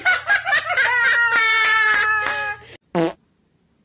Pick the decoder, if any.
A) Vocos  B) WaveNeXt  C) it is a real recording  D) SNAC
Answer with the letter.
C